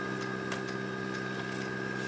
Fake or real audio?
real